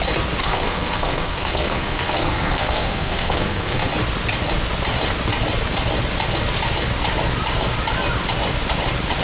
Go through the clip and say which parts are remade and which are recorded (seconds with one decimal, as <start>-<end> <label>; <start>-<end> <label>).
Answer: 0.0-0.4 recorded; 0.4-3.9 remade; 3.9-9.2 recorded